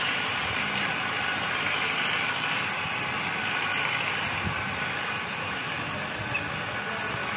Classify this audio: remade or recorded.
recorded